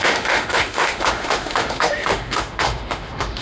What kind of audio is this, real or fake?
fake